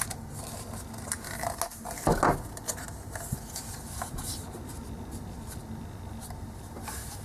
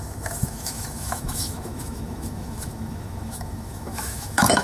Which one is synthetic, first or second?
second